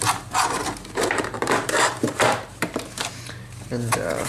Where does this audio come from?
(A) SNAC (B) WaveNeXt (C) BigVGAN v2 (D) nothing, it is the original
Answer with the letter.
C